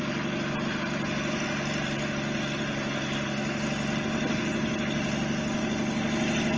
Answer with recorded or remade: recorded